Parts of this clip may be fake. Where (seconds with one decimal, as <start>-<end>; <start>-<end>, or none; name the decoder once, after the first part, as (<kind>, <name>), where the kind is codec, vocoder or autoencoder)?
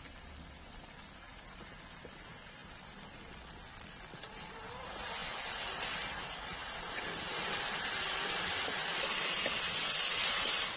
none